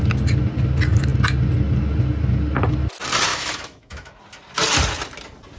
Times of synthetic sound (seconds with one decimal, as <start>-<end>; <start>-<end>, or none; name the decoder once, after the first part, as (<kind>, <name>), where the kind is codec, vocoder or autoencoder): 3.3-4.2 (autoencoder, DAC-VAE)